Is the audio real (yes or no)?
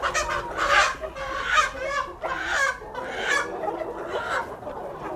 yes